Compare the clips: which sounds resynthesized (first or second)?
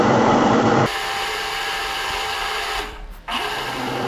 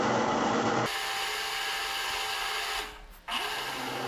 first